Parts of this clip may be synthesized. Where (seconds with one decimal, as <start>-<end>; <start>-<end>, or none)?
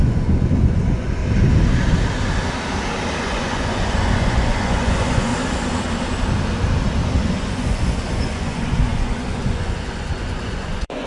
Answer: 0.0-1.2; 3.2-5.3; 7.4-11.1